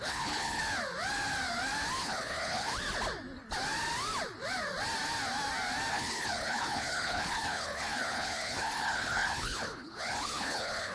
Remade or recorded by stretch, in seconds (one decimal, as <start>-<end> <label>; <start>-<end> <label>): 0.0-0.6 remade; 0.6-2.0 recorded; 2.0-2.7 remade; 2.7-5.9 recorded; 5.9-10.9 remade